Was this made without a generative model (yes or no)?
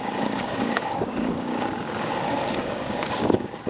no